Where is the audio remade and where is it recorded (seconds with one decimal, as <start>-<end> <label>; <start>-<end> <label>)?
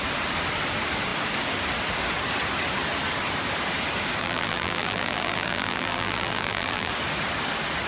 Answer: 0.0-4.2 recorded; 4.2-6.9 remade; 6.9-7.9 recorded